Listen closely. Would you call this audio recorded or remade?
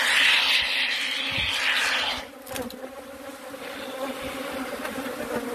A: recorded